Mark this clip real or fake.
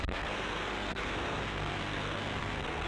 fake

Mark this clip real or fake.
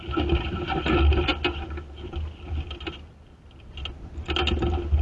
real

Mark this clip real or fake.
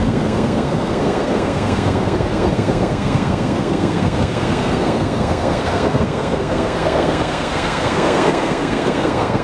fake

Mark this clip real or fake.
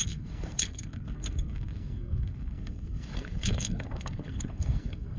fake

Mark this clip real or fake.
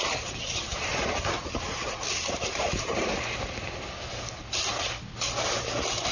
real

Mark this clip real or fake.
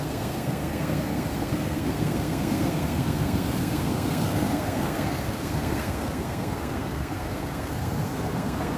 fake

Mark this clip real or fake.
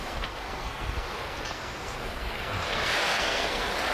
fake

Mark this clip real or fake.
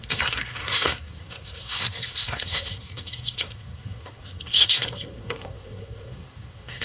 fake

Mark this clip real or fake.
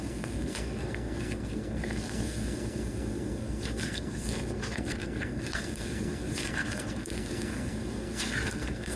fake